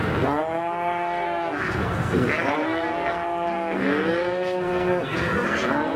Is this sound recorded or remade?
remade